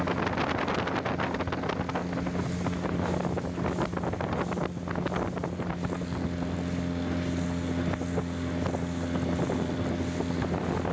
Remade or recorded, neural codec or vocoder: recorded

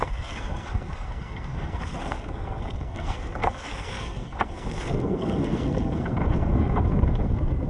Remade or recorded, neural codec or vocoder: remade, codec, SNAC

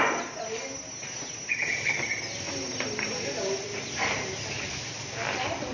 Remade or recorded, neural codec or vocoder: recorded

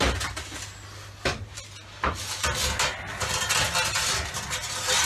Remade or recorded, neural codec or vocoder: recorded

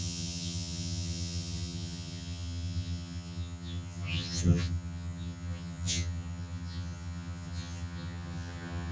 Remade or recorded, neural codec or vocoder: remade, vocoder, HiFi-GAN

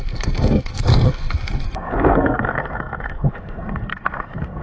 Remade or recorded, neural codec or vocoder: remade, codec, SNAC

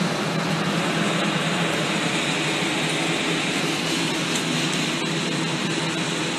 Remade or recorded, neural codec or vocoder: recorded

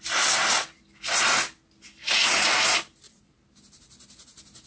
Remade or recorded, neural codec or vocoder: recorded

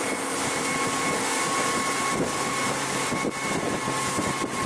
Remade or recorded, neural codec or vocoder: recorded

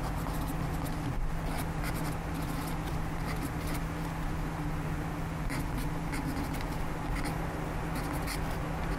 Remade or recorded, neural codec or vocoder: recorded